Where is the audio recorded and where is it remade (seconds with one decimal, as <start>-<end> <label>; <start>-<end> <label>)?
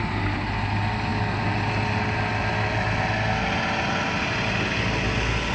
0.0-5.5 recorded